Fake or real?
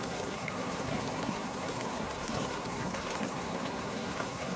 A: fake